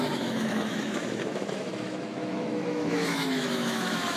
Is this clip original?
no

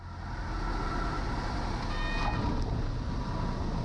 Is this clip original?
yes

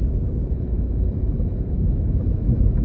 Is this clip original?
no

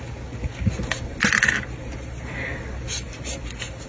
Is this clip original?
yes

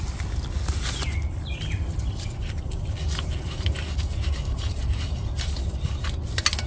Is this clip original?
yes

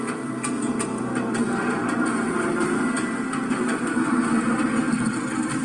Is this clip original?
yes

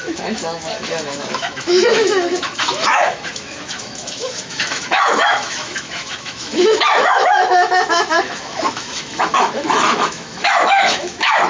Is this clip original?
no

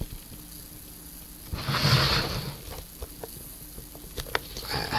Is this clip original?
yes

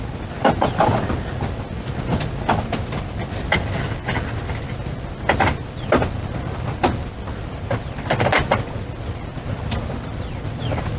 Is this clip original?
yes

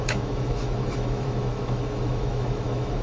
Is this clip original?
no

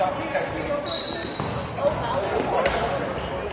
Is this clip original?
yes